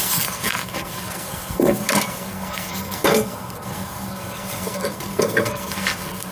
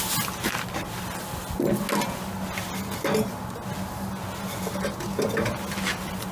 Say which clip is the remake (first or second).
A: first